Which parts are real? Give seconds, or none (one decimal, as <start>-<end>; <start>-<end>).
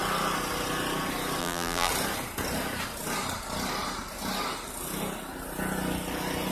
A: 0.0-1.4; 1.9-6.5